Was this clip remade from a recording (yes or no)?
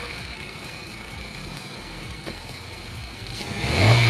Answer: yes